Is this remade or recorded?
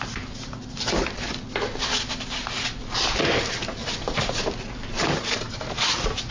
recorded